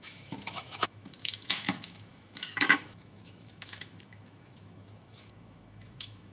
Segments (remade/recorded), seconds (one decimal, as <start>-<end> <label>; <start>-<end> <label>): 0.0-6.3 remade